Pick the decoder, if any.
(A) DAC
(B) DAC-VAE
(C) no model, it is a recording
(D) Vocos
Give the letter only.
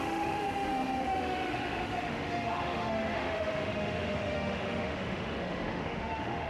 B